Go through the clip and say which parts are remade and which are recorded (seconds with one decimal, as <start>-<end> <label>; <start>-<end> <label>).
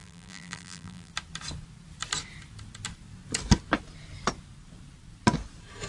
0.0-1.1 remade; 1.1-5.9 recorded